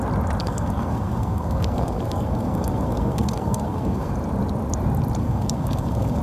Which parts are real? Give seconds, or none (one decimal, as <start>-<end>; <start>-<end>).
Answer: 0.0-0.4; 4.1-5.2